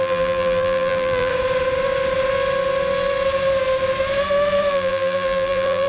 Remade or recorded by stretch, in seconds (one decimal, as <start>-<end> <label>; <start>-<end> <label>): 0.0-1.3 remade; 1.3-4.7 recorded; 4.7-5.9 remade